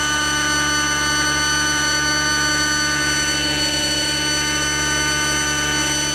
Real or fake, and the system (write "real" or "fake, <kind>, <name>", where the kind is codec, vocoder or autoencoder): real